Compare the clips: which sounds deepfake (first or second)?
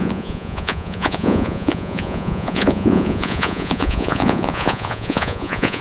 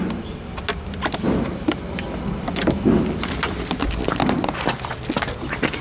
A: first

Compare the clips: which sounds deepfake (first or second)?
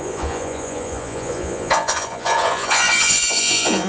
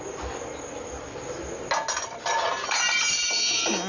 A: first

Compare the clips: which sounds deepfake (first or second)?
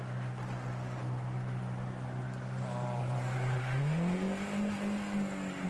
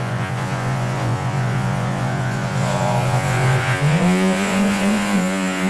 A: second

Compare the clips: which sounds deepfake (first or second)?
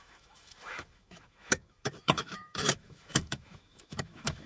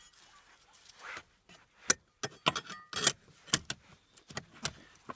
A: first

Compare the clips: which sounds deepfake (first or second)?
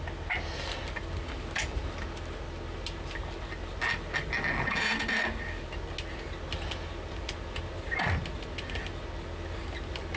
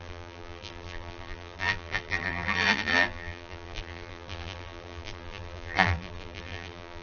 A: second